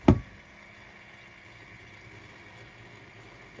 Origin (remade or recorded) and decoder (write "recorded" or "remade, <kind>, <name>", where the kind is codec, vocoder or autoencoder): recorded